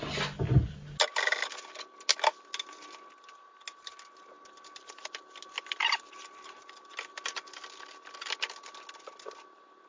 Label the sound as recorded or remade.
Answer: recorded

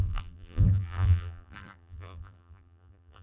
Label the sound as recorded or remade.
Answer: remade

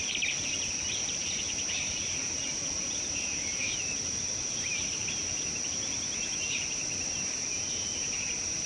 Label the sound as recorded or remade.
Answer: remade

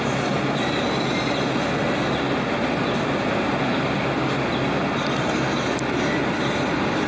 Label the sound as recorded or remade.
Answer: recorded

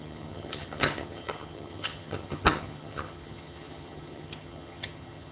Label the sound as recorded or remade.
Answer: remade